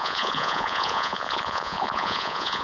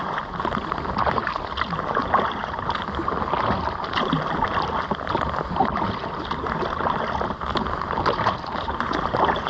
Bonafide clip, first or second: second